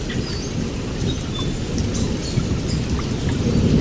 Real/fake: real